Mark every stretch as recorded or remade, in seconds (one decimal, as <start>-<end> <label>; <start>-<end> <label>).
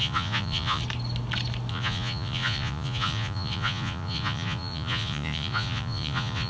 0.0-0.8 remade; 0.8-1.7 recorded; 1.7-6.5 remade